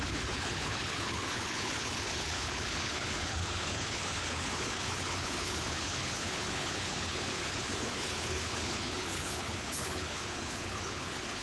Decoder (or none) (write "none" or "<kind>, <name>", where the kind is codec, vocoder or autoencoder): codec, HILCodec